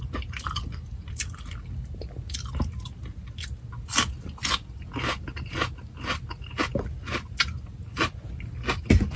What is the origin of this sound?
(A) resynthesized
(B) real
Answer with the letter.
B